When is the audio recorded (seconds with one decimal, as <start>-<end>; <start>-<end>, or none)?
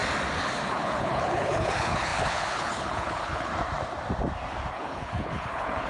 0.0-0.7; 3.5-4.7